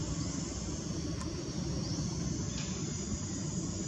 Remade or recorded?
recorded